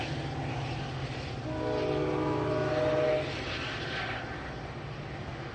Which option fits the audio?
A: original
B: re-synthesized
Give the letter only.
A